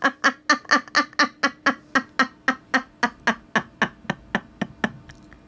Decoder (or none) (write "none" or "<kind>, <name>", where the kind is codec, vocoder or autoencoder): none